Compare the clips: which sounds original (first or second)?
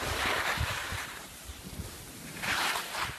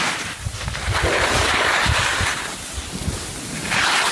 second